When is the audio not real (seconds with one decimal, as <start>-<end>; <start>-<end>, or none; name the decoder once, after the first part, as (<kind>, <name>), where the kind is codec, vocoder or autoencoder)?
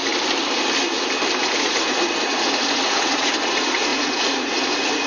1.4-5.1 (vocoder, Vocos)